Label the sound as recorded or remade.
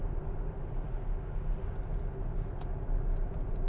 recorded